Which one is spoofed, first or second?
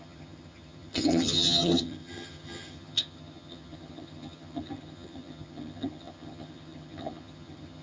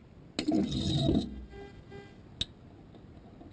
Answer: first